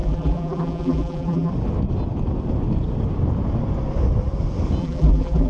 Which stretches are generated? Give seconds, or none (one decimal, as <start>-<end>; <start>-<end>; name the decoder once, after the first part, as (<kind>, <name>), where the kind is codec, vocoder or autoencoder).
0.0-1.5 (vocoder, BigVGAN v2); 4.8-5.5

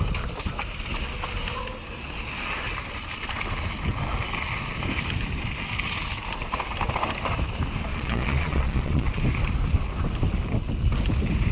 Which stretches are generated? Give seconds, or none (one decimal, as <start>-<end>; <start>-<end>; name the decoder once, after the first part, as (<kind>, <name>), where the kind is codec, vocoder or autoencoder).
7.9-9.2 (vocoder, Vocos)

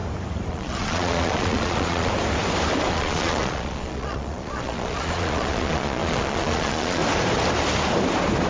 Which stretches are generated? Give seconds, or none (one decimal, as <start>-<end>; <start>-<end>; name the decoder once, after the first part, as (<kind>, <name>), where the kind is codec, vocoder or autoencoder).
0.5-2.1 (vocoder, Vocos); 2.9-7.0

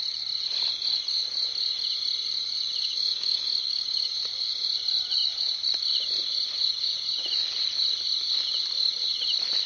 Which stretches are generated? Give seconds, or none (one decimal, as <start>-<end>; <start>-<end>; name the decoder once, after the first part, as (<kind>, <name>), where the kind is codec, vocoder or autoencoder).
2.8-4.1 (autoencoder, DAC-VAE)

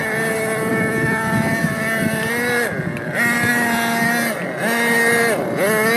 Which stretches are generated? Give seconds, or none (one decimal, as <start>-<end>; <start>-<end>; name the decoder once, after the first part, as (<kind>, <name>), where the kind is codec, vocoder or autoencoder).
none

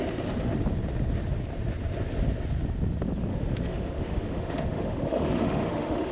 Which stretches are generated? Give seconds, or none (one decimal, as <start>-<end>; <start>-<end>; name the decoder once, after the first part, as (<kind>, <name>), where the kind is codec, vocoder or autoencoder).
3.3-6.1 (autoencoder, DAC-VAE)

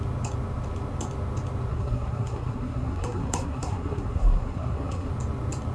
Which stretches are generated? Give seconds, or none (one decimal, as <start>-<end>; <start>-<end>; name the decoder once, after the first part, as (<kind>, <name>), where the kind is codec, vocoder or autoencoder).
1.7-5.1 (codec, SNAC)

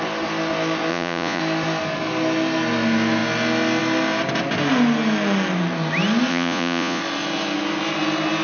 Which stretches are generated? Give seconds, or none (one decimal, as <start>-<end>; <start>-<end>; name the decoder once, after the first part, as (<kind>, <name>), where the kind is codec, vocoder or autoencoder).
0.9-1.4 (vocoder, Vocos); 6.3-7.0